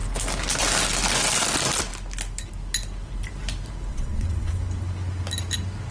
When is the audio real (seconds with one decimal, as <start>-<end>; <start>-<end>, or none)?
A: 0.0-3.9; 4.6-5.9